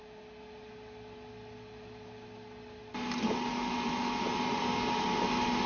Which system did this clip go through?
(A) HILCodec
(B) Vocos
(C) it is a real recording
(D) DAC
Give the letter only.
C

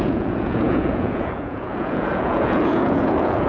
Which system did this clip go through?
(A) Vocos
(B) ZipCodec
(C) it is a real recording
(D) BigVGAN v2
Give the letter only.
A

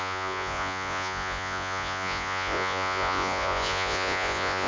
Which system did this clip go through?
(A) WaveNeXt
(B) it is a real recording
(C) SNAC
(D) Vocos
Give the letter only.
D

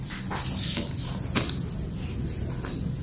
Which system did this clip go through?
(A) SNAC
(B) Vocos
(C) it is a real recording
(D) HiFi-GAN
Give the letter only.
C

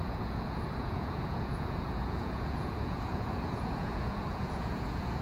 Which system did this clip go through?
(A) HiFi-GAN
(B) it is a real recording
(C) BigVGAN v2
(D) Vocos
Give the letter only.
D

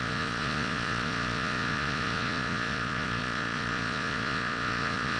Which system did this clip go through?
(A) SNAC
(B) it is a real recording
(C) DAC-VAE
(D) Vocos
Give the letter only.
D